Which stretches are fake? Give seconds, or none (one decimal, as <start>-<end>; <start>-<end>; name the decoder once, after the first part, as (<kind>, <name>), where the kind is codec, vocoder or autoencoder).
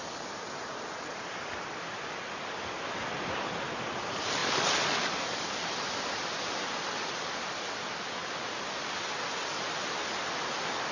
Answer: none